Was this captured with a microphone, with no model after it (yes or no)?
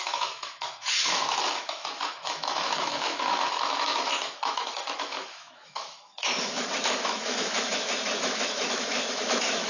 no